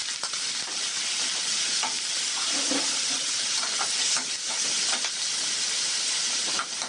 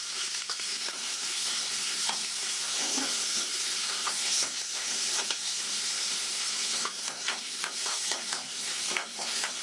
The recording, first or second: first